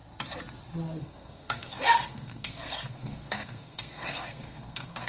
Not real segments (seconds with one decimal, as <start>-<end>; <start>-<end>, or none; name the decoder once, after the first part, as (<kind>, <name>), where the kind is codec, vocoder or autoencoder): 1.0-5.1 (codec, SNAC)